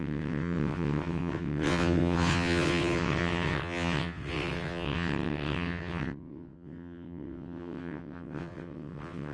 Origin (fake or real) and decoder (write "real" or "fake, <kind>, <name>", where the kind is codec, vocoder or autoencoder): fake, vocoder, WaveNeXt